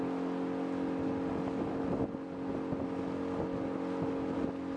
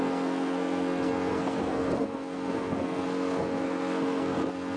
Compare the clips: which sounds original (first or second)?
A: first